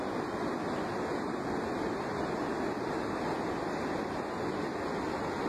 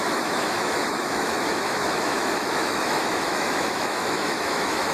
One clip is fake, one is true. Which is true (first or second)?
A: first